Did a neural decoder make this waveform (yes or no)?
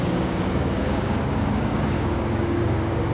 yes